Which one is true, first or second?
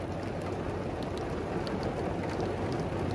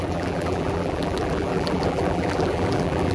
first